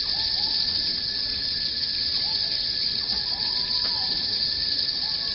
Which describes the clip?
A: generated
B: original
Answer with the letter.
B